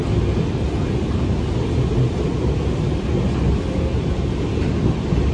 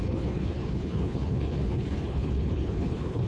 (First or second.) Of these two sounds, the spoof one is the second